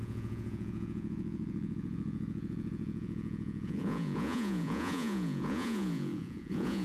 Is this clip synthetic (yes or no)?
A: yes